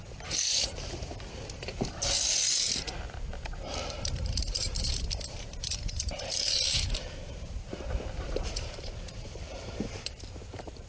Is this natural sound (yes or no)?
no